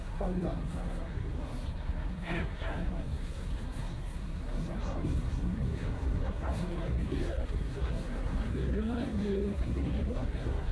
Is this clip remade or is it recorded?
remade